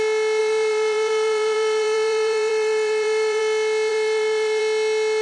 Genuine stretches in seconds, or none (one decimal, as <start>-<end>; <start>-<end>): 0.0-0.4; 3.4-3.9; 4.6-5.2